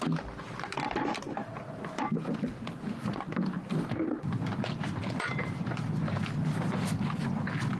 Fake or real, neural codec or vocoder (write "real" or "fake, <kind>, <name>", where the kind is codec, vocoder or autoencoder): real